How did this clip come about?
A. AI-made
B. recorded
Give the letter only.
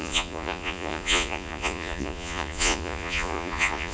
A